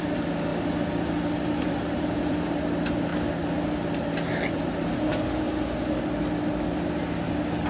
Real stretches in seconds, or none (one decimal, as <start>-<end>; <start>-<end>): 0.0-7.7